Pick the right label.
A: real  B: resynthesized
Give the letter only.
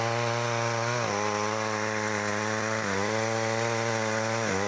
A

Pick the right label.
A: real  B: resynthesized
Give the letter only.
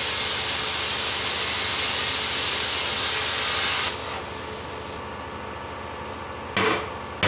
A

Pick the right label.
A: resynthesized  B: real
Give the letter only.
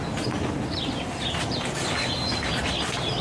B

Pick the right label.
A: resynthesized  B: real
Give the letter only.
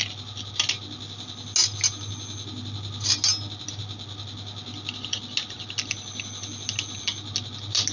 B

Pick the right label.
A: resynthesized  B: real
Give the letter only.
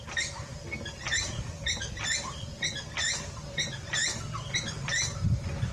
B